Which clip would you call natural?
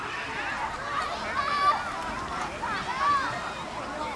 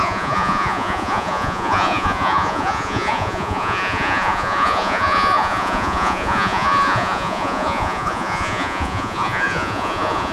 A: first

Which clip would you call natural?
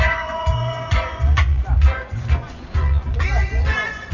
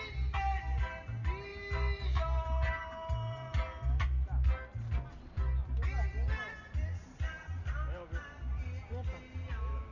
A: second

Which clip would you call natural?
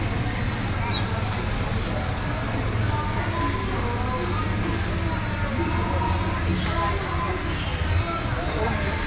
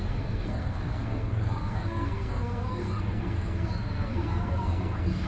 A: first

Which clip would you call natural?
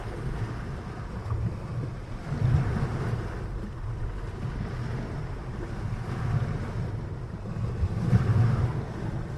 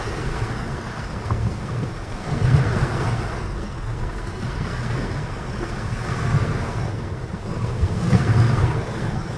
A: first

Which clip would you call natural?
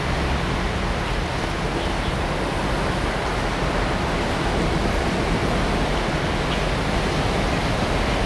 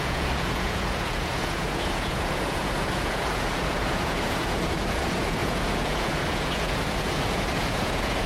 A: first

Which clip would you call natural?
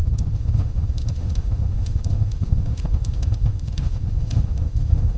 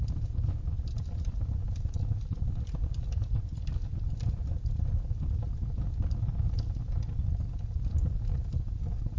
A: second